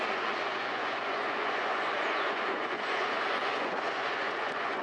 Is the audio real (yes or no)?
no